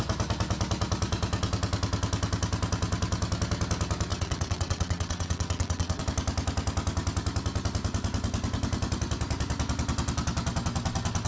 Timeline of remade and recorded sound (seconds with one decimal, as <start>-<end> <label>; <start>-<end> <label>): 0.0-4.1 recorded; 4.1-6.0 remade; 6.0-11.3 recorded

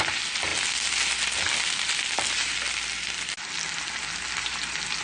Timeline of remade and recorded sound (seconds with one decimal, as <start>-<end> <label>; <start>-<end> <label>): 0.0-5.0 recorded

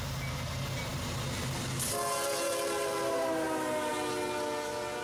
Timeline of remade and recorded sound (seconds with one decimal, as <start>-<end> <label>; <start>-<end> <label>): 0.0-5.0 recorded

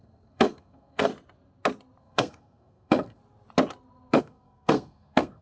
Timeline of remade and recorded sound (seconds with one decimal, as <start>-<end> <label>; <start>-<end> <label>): 0.0-1.1 remade; 1.1-2.0 recorded; 2.0-3.2 remade; 3.2-4.2 recorded; 4.2-5.4 remade

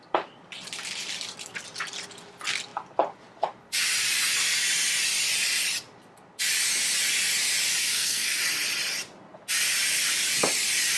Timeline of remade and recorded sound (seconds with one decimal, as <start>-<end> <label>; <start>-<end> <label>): 0.0-7.8 recorded; 7.8-8.4 remade; 8.4-11.0 recorded